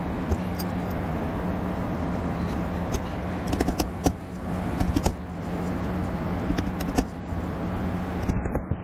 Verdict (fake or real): real